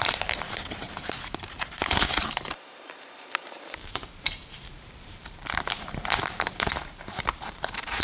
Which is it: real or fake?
fake